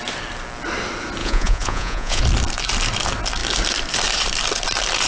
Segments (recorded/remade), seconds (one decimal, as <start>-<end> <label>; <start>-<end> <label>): 0.0-1.2 recorded; 1.2-2.2 remade; 2.2-5.1 recorded